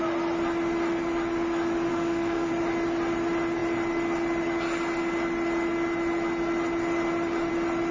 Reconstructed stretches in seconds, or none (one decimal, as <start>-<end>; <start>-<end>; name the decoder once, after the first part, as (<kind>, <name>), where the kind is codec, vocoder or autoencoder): 1.9-2.5 (autoencoder, DAC-VAE)